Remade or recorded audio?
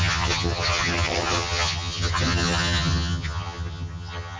remade